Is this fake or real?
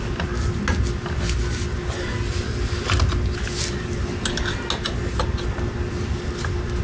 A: real